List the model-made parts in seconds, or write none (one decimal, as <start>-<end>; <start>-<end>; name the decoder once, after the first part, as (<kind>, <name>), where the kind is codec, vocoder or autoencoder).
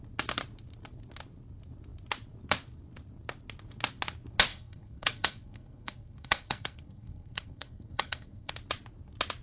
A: 4.5-8.5 (codec, SNAC)